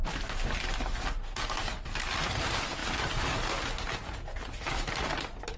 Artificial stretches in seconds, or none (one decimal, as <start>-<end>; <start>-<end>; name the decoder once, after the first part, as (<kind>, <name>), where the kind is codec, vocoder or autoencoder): none